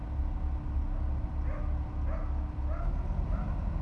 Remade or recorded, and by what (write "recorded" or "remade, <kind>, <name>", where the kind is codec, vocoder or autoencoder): recorded